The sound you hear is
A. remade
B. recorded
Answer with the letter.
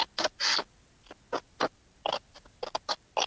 B